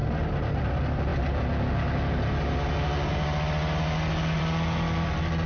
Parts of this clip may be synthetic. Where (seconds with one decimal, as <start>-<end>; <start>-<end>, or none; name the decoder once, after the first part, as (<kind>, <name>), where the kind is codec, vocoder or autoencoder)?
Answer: 0.0-0.7 (vocoder, BigVGAN v2)